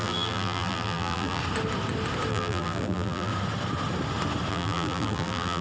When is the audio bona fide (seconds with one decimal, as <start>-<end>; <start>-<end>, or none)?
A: 1.4-2.3; 3.3-4.5